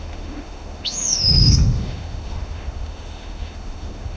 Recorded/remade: remade